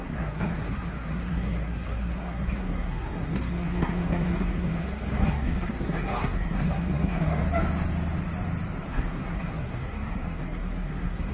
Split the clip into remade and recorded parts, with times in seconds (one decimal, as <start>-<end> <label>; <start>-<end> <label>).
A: 0.0-7.4 remade; 7.4-8.9 recorded; 8.9-11.3 remade